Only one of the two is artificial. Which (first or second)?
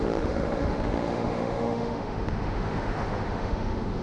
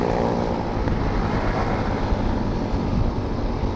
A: first